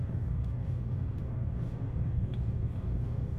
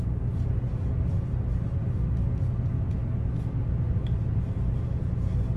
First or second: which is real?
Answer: second